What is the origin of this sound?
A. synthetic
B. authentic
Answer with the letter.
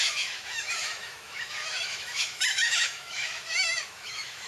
A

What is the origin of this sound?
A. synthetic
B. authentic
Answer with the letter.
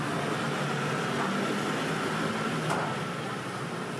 B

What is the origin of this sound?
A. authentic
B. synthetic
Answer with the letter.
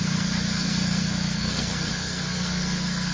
B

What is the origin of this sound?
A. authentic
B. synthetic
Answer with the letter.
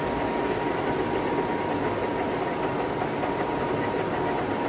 A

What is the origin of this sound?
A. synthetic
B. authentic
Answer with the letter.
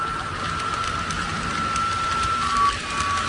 B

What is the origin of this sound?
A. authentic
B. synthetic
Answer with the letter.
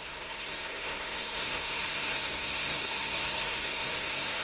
B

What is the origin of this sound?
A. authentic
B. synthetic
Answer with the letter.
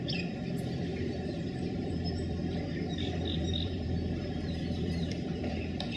B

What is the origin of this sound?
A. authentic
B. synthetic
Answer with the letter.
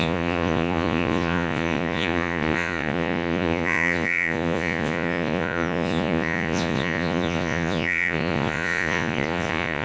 B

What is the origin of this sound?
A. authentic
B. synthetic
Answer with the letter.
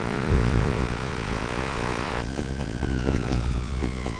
B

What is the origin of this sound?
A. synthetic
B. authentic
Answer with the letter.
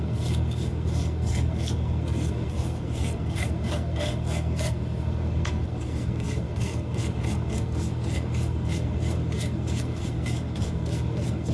A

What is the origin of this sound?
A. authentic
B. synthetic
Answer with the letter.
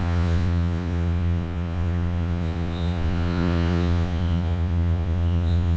B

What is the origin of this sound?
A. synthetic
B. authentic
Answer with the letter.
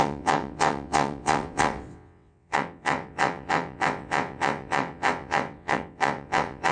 A